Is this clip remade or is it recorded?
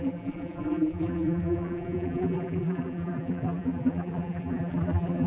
remade